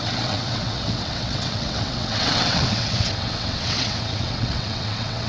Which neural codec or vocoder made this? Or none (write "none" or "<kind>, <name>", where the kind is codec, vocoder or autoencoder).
vocoder, WaveNeXt